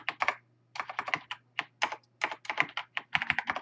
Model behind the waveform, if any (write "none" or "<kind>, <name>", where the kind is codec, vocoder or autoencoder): none